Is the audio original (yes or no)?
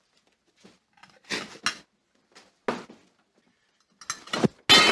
yes